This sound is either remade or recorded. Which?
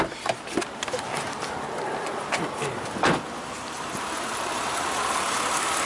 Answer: recorded